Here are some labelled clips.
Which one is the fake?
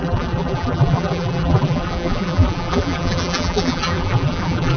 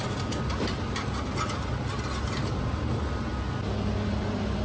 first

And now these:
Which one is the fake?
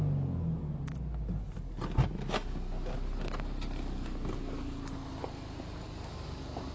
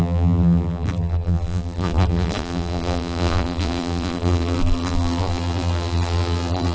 second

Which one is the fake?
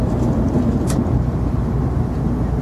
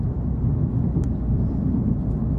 second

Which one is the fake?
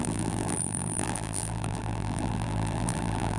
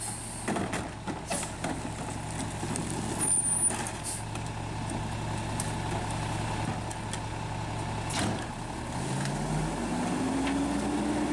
first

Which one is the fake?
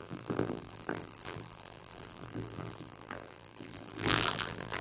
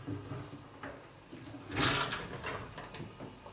first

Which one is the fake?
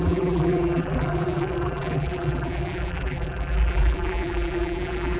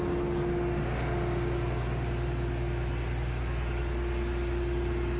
first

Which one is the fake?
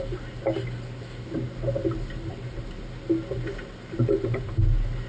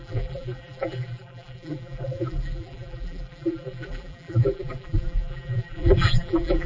second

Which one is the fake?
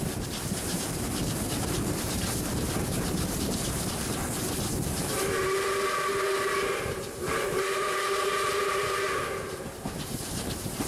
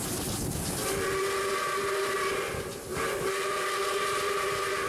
first